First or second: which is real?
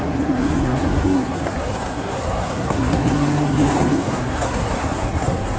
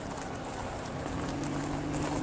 second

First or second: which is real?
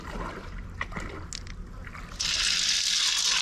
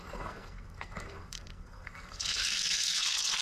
first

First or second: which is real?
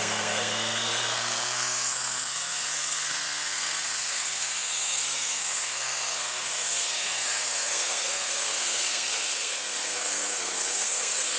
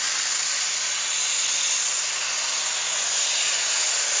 second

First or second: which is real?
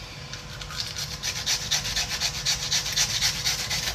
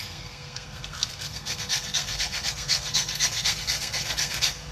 first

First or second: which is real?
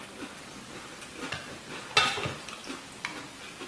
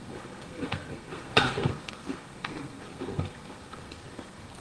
first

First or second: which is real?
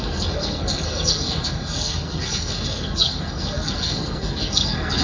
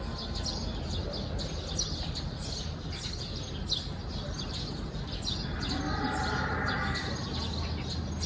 second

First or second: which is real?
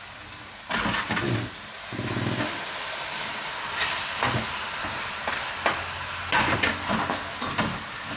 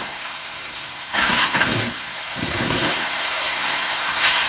first